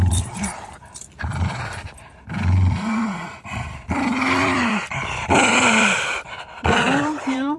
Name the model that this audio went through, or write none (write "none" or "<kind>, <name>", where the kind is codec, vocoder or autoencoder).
vocoder, BigVGAN v2